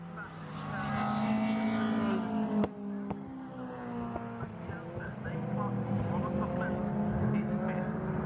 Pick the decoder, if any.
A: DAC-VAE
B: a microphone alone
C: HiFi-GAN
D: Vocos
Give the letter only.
B